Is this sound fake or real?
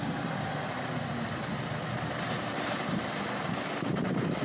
real